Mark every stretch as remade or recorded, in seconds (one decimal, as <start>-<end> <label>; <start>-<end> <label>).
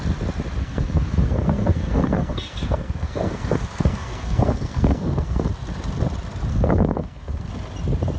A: 0.0-0.6 recorded; 0.6-5.5 remade; 5.5-6.5 recorded; 6.5-7.5 remade; 7.5-8.2 recorded